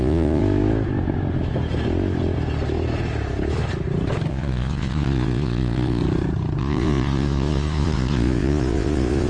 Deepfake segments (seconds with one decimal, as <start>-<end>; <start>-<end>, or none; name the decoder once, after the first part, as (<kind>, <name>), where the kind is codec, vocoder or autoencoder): 0.0-0.4 (vocoder, Vocos); 4.3-6.0; 6.6-9.3

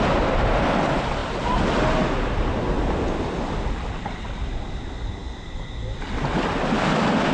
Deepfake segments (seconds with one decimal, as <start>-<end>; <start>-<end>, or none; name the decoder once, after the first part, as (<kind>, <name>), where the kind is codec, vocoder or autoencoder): none

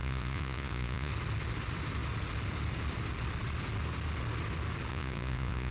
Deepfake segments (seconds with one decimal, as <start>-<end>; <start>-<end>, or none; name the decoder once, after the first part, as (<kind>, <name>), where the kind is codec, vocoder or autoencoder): 0.0-1.1 (vocoder, Vocos); 4.9-5.7

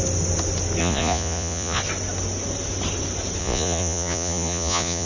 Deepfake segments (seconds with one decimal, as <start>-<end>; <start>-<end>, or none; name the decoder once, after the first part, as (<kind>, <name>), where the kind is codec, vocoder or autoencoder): 0.8-1.8 (vocoder, Vocos); 3.4-5.1

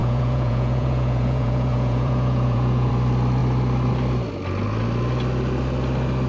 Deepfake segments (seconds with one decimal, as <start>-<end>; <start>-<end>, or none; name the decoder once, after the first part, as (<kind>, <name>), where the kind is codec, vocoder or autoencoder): 0.0-2.9 (vocoder, Vocos)